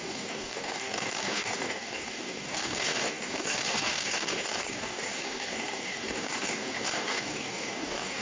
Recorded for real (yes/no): no